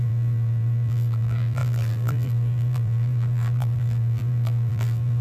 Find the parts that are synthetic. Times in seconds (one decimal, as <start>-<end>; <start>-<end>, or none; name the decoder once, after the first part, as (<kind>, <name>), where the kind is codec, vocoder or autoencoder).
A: 0.0-5.2 (vocoder, BigVGAN v2)